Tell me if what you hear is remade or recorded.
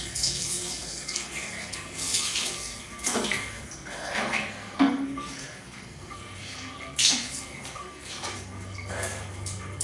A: remade